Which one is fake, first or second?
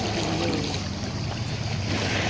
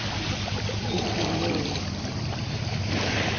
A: second